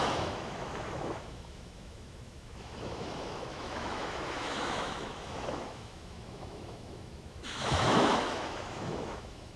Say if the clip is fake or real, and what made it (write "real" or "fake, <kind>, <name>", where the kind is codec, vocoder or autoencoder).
fake, autoencoder, DAC-VAE